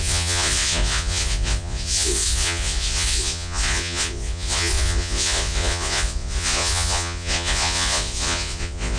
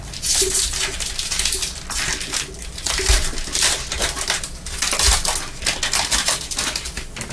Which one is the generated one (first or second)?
first